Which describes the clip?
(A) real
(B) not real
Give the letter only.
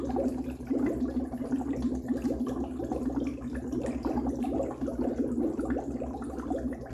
A